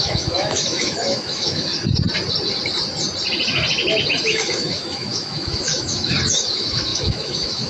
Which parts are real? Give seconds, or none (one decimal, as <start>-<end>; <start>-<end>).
1.7-4.1